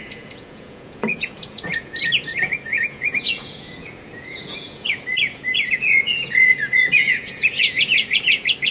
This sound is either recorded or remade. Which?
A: remade